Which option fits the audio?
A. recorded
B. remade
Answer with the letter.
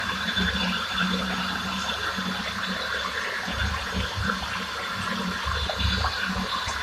B